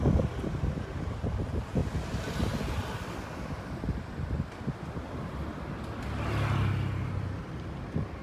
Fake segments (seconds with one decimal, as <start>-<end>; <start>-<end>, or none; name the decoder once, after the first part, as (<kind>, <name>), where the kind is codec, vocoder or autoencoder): 1.8-4.9 (vocoder, BigVGAN v2)